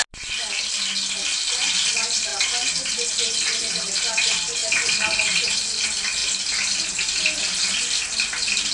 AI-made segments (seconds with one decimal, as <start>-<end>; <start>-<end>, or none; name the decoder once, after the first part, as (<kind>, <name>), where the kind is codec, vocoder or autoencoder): none